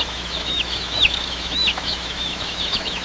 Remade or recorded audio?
remade